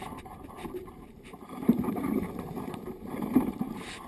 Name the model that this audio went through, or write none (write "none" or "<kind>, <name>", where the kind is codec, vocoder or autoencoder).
vocoder, BigVGAN v2